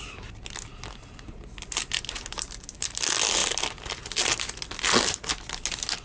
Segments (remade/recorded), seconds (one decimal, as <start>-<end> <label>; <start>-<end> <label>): 0.0-6.0 recorded